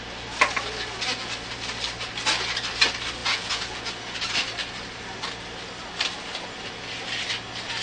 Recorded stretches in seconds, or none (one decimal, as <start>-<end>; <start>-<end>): 0.0-3.2; 3.8-7.8